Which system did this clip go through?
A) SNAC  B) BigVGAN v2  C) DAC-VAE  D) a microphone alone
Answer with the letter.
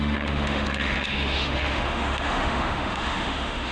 C